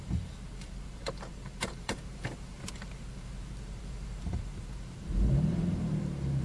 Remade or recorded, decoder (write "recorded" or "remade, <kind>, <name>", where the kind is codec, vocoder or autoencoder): remade, vocoder, BigVGAN v2